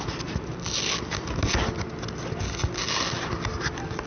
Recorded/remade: recorded